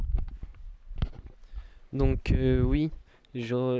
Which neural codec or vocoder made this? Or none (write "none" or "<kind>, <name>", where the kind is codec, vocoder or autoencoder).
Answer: none